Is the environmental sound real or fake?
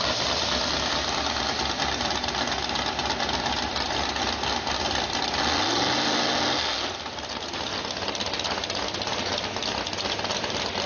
real